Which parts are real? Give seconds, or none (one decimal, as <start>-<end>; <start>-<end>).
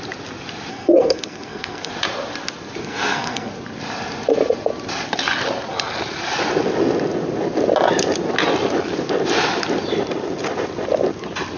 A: 0.0-0.7; 1.9-2.8; 3.5-11.6